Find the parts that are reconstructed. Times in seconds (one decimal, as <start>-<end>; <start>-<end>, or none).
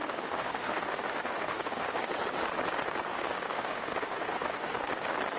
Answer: 0.0-2.0; 3.1-4.8